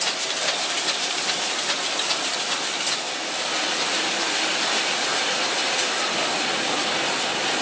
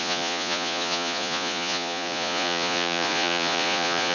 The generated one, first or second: second